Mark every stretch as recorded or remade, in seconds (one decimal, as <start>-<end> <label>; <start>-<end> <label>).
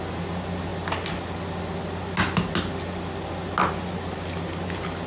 0.0-5.1 recorded